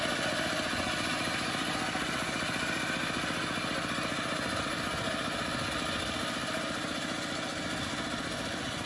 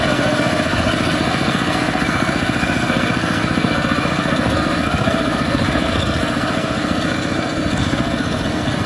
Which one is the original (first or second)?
first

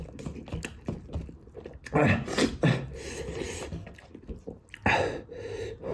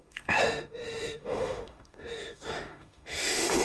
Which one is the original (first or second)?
first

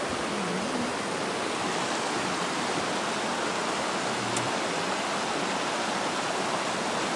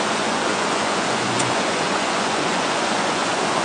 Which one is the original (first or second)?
first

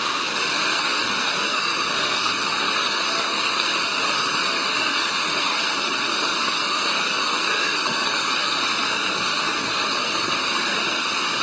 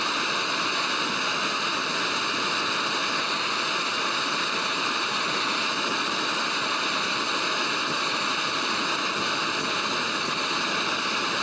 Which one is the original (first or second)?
second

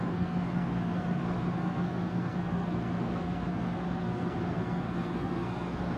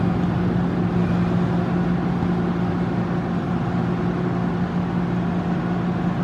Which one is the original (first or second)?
second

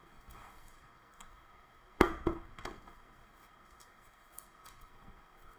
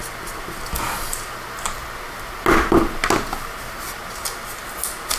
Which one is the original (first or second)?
second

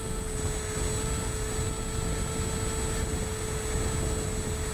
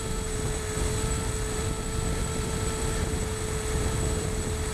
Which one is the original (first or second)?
first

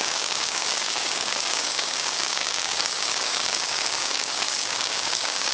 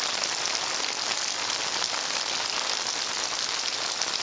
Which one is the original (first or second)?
second